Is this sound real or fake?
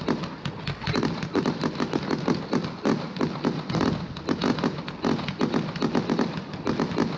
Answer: real